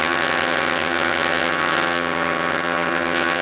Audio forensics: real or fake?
fake